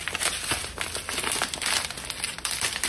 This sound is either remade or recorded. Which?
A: recorded